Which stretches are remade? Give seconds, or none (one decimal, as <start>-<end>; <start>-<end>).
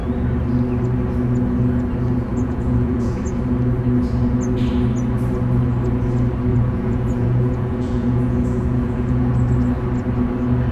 2.3-3.4; 6.5-9.3